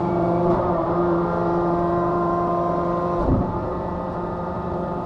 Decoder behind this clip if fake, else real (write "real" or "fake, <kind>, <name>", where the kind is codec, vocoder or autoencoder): fake, vocoder, BigVGAN v2